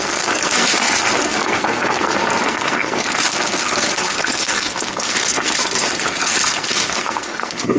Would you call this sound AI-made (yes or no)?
yes